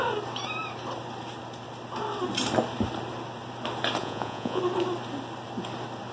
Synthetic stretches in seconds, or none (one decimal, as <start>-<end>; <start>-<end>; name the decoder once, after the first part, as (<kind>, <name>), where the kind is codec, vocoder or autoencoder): 4.0-4.6 (vocoder, Vocos)